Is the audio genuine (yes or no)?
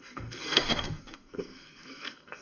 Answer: no